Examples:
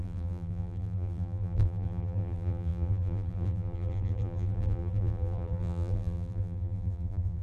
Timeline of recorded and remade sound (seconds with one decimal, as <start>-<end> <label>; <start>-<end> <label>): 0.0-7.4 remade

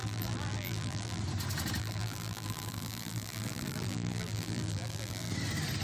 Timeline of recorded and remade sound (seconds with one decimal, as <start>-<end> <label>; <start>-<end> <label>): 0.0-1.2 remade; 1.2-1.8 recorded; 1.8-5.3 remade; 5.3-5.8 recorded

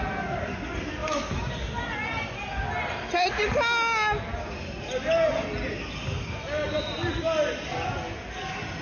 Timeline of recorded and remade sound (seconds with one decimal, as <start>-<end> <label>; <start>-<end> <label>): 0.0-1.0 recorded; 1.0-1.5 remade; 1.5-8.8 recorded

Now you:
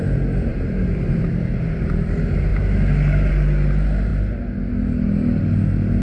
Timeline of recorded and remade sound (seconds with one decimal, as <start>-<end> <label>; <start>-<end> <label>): 0.0-0.5 recorded; 0.5-1.3 remade; 1.3-6.0 recorded

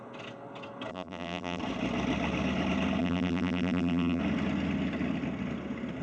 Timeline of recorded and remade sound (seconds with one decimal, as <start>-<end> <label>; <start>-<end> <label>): 0.0-0.9 recorded; 0.9-1.6 remade; 1.6-3.0 recorded; 3.0-4.2 remade; 4.2-6.0 recorded

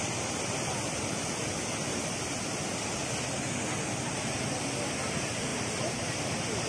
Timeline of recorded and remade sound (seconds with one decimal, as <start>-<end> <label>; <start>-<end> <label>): 0.0-5.5 recorded; 5.5-6.2 remade; 6.2-6.7 recorded